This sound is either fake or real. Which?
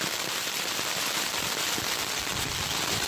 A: fake